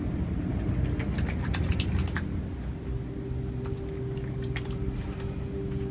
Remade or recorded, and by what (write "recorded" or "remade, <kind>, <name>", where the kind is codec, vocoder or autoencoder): recorded